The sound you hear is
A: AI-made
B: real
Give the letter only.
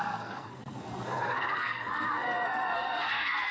A